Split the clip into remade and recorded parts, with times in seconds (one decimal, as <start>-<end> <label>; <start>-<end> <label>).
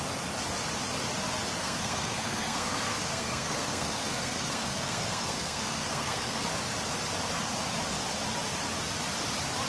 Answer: 0.0-1.6 recorded; 1.6-6.5 remade; 6.5-9.7 recorded